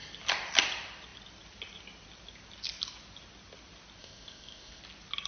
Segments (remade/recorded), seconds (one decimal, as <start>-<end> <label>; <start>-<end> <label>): 0.0-4.0 recorded; 4.0-4.8 remade; 4.8-5.3 recorded